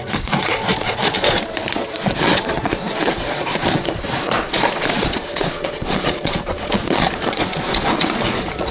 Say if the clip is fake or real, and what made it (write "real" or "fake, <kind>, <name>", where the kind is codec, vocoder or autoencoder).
fake, vocoder, Vocos